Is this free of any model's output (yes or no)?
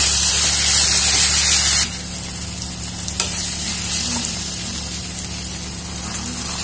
yes